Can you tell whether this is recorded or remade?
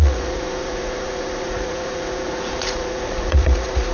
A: remade